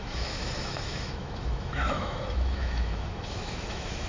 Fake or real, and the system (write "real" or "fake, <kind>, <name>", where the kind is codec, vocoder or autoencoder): fake, autoencoder, DAC-VAE